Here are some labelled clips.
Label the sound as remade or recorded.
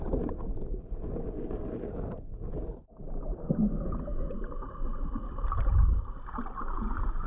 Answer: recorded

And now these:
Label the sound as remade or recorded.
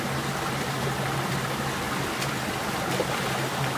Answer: recorded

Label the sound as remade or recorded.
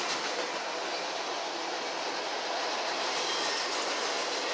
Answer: recorded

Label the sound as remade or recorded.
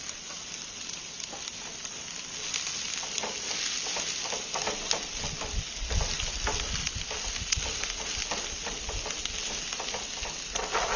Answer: recorded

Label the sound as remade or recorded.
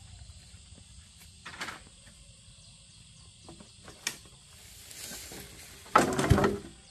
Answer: recorded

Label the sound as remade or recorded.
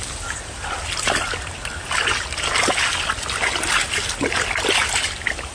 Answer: recorded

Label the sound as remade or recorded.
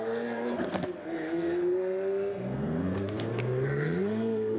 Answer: remade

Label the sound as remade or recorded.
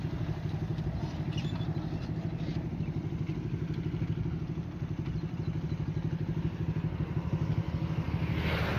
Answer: recorded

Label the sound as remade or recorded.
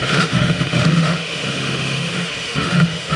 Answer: remade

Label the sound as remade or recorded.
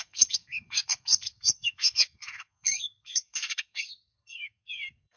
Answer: remade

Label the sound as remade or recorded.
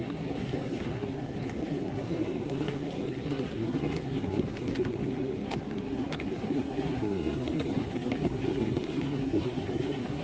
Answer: remade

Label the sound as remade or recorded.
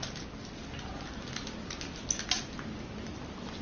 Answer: recorded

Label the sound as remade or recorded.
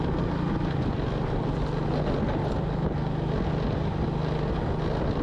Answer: recorded